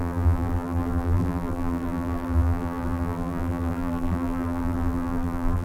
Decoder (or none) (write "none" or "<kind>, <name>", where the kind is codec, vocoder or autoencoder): vocoder, BigVGAN v2